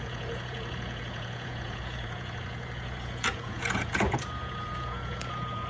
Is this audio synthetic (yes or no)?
yes